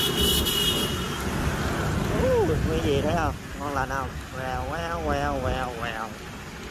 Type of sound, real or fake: real